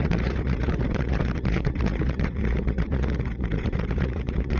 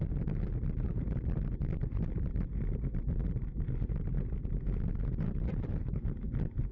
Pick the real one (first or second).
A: second